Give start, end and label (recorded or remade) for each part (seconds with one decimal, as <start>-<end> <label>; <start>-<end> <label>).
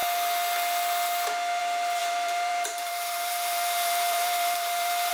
0.0-2.0 recorded; 2.0-5.1 remade